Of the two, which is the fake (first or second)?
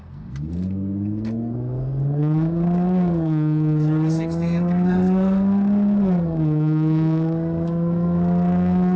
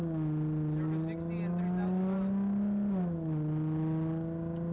first